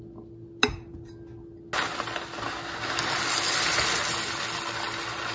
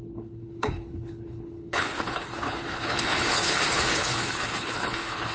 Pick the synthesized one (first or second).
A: second